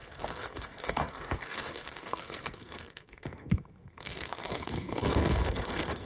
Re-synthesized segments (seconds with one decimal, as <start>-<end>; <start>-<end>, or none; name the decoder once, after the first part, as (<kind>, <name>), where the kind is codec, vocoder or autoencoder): 0.0-6.1 (codec, SNAC)